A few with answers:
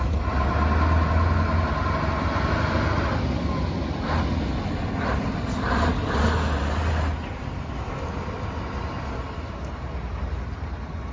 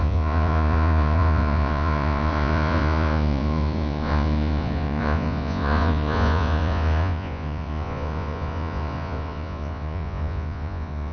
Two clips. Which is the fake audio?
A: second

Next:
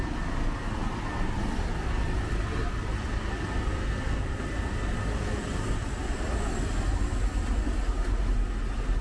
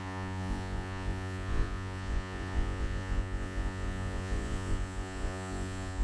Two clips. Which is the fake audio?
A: second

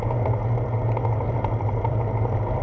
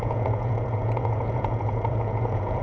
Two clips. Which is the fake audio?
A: second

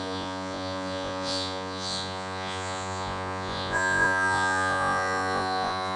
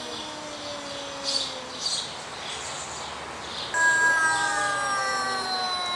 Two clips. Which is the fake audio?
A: first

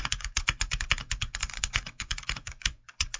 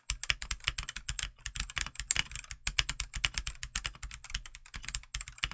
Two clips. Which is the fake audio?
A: first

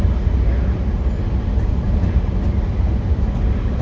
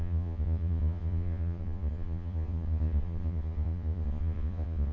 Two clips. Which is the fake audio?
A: second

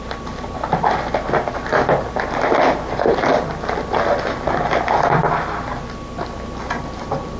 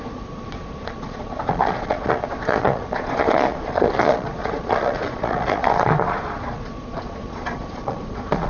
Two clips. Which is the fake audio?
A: second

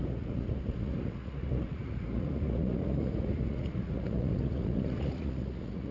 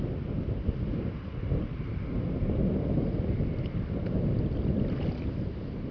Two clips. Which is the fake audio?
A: first